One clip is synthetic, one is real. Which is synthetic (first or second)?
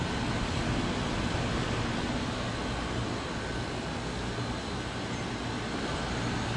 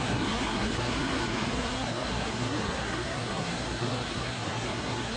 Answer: second